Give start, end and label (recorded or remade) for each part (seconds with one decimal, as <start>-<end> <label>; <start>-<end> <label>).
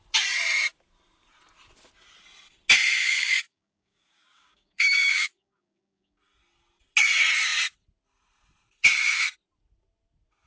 0.0-3.0 recorded; 3.0-6.2 remade; 6.2-10.5 recorded